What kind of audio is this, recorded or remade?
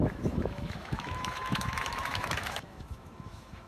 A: remade